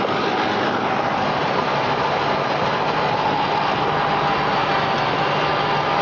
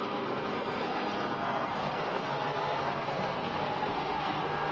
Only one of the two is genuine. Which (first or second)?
first